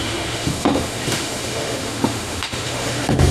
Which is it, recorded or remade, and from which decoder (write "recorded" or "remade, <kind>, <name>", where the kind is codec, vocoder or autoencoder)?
remade, autoencoder, DAC-VAE